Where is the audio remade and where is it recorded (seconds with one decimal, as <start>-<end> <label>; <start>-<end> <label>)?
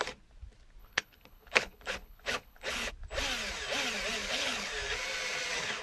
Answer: 0.0-0.8 recorded; 0.8-2.9 remade; 2.9-4.2 recorded; 4.2-4.7 remade; 4.7-5.8 recorded